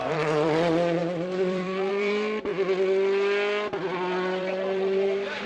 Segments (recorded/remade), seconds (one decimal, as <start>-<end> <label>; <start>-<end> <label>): 0.0-2.5 remade; 2.5-4.4 recorded; 4.4-5.5 remade